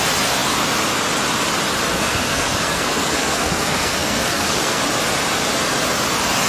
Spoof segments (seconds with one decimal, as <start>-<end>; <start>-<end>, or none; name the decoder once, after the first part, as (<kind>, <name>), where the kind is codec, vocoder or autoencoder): 1.9-4.8 (codec, SNAC)